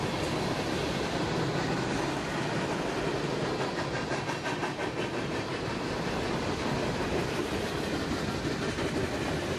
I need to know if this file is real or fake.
real